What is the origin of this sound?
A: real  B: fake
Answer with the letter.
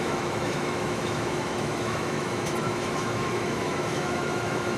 B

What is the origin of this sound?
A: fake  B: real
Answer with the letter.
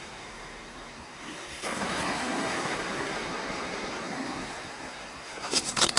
A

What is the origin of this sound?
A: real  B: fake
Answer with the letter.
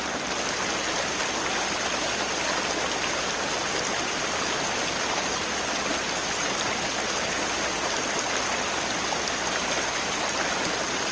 A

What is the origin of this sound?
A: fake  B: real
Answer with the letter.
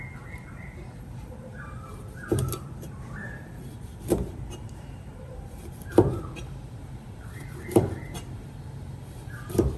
A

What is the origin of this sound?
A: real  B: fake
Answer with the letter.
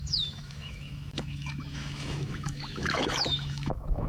B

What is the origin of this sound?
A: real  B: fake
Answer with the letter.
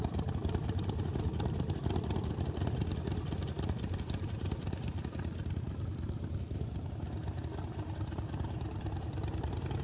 A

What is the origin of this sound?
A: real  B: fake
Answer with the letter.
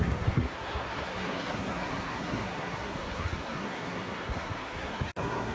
B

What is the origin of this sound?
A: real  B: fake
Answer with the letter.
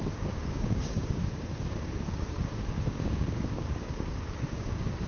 B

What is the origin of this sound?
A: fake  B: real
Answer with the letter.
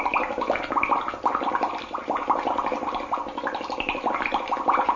B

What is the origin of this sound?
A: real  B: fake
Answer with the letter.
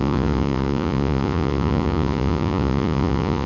B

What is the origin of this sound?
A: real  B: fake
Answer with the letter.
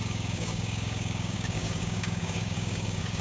B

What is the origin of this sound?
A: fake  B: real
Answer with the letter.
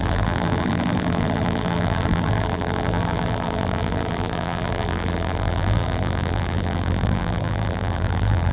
A